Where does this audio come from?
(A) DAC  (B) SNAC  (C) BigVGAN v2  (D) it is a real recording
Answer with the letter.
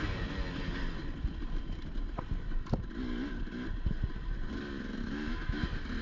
D